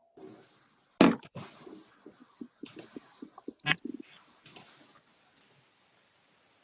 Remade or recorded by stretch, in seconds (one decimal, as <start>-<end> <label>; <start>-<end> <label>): 0.0-6.6 recorded